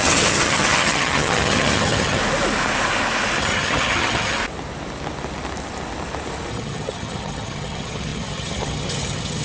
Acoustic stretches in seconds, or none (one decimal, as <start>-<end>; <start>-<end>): 2.2-3.4; 4.4-6.5